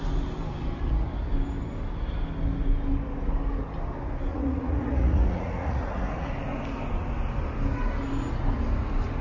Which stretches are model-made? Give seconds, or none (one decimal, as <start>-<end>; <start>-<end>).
4.3-6.3